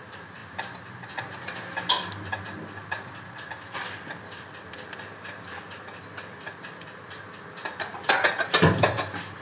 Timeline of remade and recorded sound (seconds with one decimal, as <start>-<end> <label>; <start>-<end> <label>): 0.0-9.4 recorded